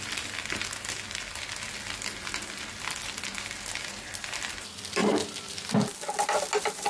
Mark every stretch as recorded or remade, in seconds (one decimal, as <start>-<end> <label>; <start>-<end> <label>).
0.0-5.0 recorded; 5.0-5.7 remade; 5.7-6.9 recorded

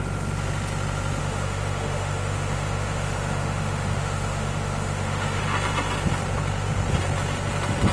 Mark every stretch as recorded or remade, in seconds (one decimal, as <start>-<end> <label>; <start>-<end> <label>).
0.0-1.2 recorded; 1.2-5.4 remade; 5.4-7.9 recorded

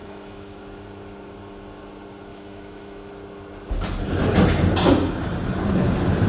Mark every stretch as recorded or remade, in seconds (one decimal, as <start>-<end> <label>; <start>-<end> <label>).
0.0-0.6 remade; 0.6-2.3 recorded; 2.3-3.1 remade; 3.1-6.3 recorded

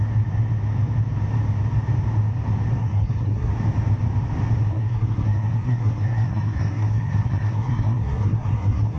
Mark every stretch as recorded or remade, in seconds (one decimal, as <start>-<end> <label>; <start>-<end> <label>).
0.0-2.8 recorded; 2.8-3.5 remade; 3.5-4.7 recorded; 4.7-9.0 remade

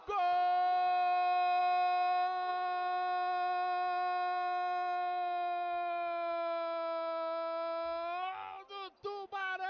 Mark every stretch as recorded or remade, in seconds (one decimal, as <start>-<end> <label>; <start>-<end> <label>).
0.0-9.7 recorded

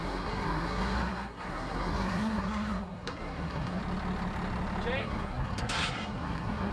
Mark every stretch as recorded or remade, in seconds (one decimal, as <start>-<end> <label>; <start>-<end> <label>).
0.0-3.8 remade; 3.8-5.0 recorded; 5.0-6.7 remade

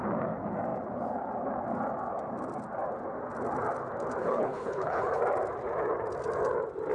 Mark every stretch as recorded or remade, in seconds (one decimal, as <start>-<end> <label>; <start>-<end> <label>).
0.0-4.2 recorded; 4.2-5.2 remade; 5.2-6.9 recorded